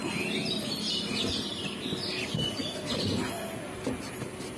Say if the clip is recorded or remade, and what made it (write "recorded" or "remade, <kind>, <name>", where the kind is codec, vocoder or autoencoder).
recorded